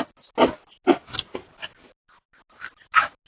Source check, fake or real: real